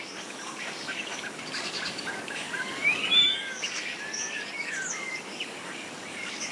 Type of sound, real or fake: fake